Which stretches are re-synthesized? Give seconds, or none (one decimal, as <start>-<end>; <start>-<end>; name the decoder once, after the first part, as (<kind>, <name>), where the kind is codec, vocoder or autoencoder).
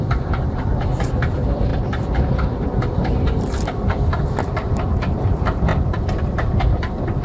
0.0-5.7 (vocoder, BigVGAN v2)